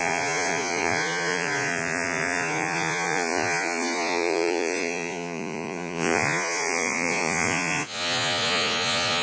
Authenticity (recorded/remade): remade